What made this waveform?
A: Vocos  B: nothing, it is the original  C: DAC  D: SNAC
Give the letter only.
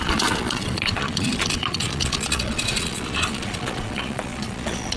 A